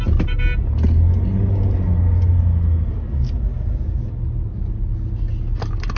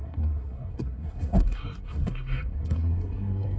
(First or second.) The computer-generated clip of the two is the second